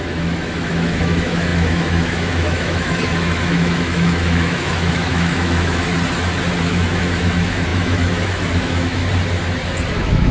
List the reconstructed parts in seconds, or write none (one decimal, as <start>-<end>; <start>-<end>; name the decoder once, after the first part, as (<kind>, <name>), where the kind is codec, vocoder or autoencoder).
0.0-5.9 (autoencoder, DAC-VAE); 6.6-9.0; 9.9-10.3